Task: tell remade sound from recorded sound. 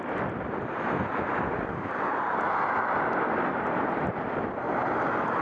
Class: recorded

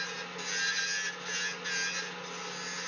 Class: recorded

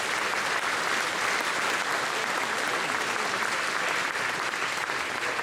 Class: recorded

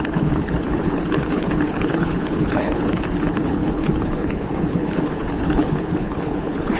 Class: remade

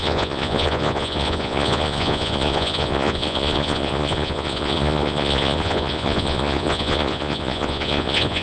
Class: remade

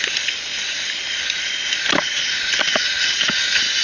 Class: recorded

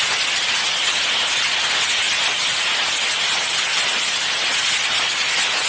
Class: recorded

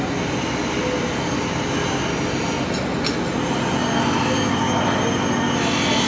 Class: recorded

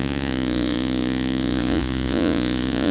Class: remade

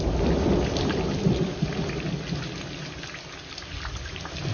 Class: recorded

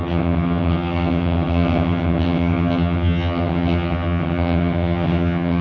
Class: remade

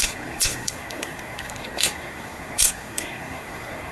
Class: remade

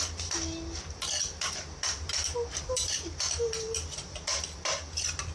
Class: remade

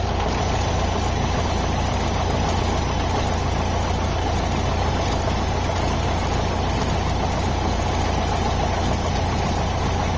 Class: recorded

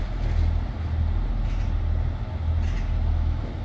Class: recorded